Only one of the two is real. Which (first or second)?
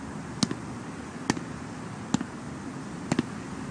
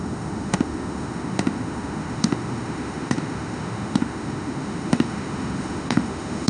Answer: first